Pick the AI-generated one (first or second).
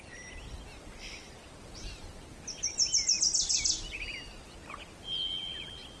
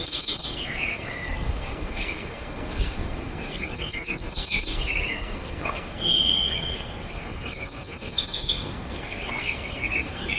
second